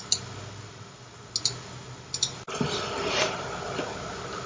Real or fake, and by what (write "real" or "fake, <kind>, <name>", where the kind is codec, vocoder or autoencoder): real